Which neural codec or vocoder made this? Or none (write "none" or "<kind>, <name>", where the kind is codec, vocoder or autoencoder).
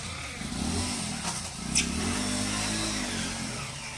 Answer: none